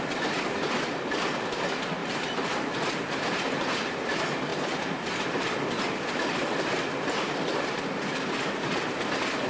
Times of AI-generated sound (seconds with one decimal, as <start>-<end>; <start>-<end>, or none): 2.0-3.5